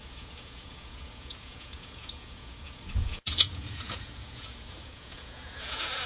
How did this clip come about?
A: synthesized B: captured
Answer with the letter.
A